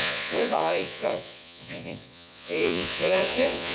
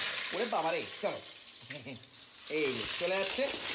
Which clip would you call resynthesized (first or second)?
first